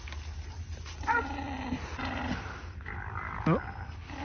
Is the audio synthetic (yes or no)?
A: no